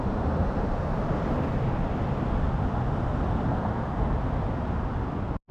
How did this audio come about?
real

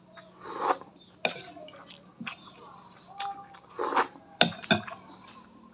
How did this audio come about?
real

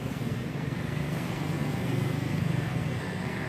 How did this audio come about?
fake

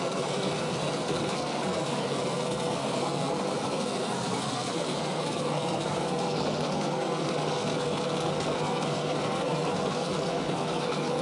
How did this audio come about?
fake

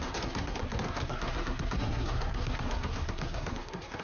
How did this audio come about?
fake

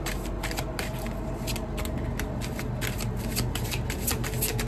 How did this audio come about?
real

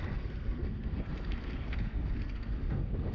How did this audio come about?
fake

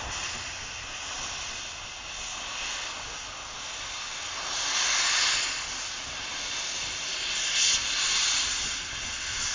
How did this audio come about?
real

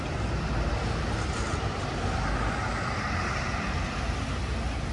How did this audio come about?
real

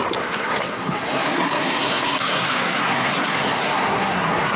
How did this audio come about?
fake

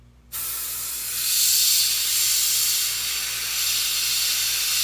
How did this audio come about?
real